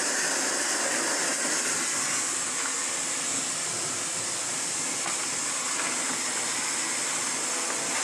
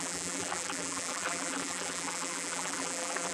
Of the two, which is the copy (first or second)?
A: second